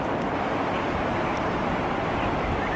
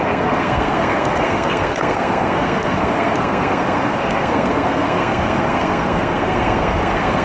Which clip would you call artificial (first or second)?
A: second